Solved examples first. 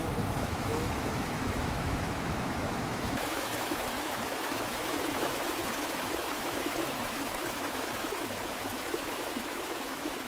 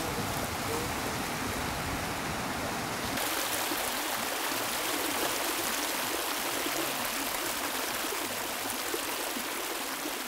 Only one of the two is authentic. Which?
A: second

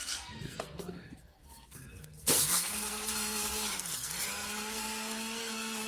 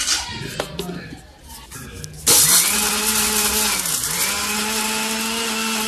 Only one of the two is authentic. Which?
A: second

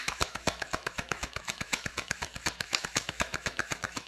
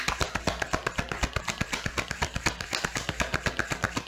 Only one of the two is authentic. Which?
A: second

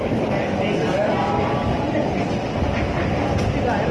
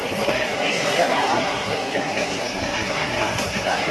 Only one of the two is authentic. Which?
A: first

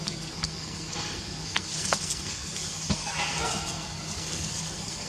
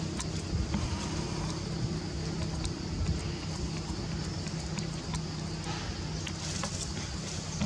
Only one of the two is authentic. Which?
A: second